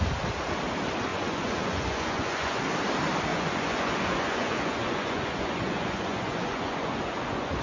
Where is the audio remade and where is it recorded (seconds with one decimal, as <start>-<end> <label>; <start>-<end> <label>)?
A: 0.0-1.1 recorded; 1.1-2.6 remade; 2.6-3.3 recorded; 3.3-7.6 remade